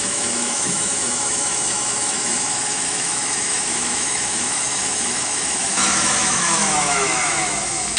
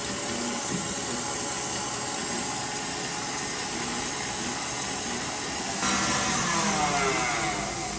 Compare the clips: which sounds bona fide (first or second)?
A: second